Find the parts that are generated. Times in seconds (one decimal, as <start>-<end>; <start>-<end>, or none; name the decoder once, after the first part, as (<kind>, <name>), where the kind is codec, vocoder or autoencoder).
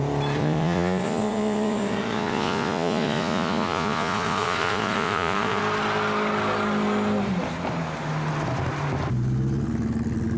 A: 0.4-5.6 (vocoder, Vocos)